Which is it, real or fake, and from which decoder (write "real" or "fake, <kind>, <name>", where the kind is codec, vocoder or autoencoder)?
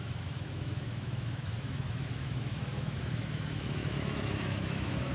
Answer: fake, autoencoder, DAC-VAE